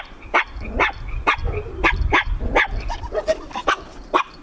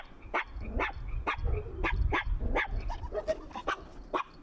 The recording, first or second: second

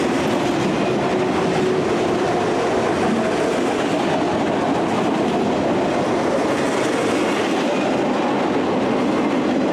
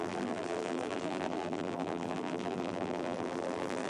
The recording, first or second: first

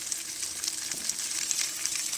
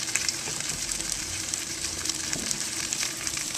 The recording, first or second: first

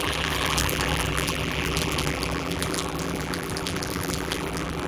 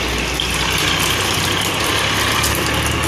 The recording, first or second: second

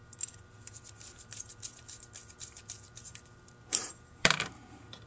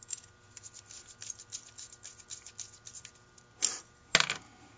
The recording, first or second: second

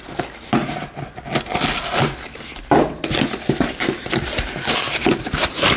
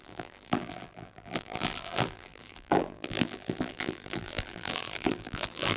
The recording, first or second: first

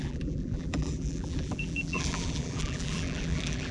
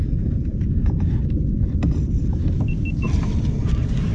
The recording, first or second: second